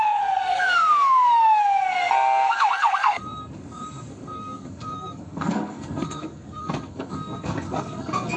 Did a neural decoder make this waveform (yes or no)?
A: yes